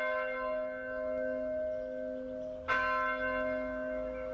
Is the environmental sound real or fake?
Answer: real